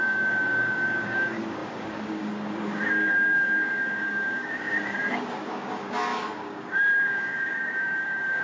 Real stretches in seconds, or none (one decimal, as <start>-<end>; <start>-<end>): none